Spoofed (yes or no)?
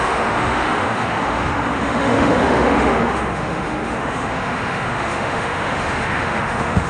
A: yes